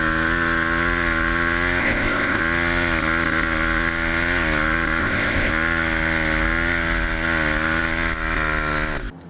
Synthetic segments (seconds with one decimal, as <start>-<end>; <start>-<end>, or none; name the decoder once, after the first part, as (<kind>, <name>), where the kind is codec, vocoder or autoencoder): 1.8-2.4 (codec, ZipCodec); 5.0-5.5